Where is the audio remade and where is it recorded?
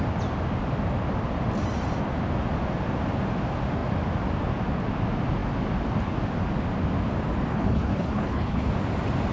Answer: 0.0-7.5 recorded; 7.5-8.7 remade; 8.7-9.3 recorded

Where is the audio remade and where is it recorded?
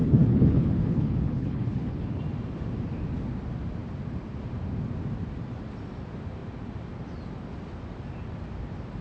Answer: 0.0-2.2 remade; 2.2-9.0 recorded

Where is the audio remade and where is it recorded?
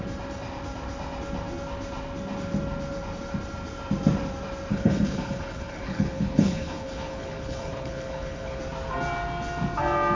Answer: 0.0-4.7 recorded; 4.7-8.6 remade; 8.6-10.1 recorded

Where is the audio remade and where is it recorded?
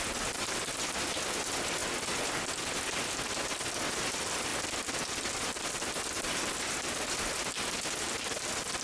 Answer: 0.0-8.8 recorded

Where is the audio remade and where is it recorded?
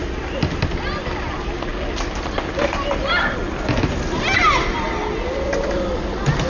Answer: 0.0-6.5 recorded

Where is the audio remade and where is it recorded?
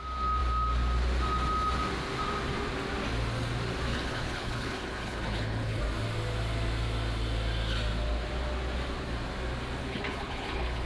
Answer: 0.0-3.9 recorded; 3.9-5.8 remade; 5.8-9.8 recorded; 9.8-10.9 remade